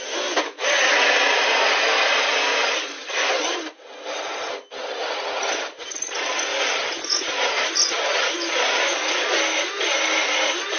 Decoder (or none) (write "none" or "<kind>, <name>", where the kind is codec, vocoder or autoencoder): none